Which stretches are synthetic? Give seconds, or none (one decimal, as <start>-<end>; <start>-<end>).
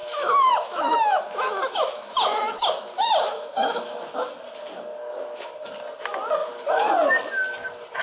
0.0-4.1; 4.9-5.5; 6.4-6.9